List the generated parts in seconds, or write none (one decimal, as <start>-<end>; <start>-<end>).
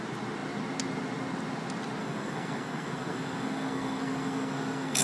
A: 2.0-5.0